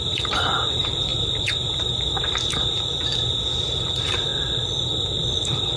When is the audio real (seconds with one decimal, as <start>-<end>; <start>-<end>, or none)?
4.3-5.8